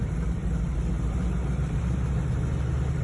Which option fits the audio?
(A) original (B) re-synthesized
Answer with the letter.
A